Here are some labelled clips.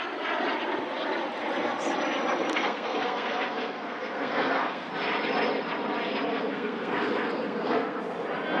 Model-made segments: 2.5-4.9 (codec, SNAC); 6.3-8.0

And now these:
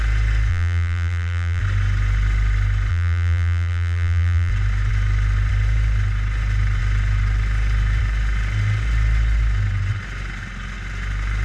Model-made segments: 0.5-1.6 (vocoder, BigVGAN v2); 2.9-4.5

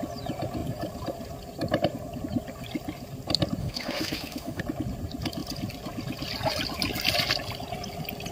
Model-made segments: 3.6-4.6 (autoencoder, DAC-VAE)

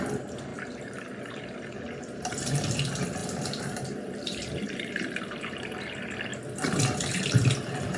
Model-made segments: 3.2-5.6 (vocoder, BigVGAN v2); 6.3-7.3

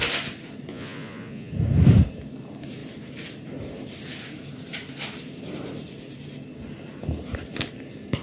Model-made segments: 0.7-1.5 (vocoder, Vocos)

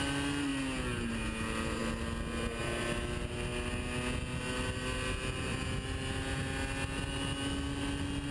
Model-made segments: none